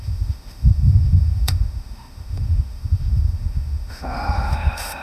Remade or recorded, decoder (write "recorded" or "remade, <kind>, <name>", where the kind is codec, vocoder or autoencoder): remade, autoencoder, DAC-VAE